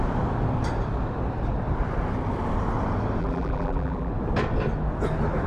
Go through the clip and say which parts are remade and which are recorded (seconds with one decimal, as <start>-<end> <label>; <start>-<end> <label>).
0.0-3.2 recorded; 3.2-4.1 remade; 4.1-5.5 recorded